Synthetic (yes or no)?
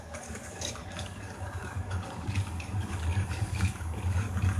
yes